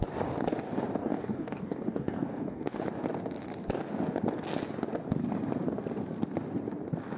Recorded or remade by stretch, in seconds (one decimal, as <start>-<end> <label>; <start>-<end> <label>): 0.0-1.0 recorded; 1.0-2.8 remade; 2.8-7.2 recorded